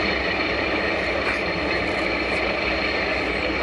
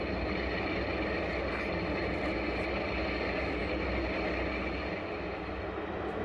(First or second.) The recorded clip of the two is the second